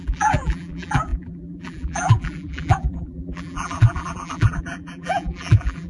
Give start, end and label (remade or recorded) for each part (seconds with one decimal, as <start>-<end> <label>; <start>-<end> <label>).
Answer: 0.0-5.9 remade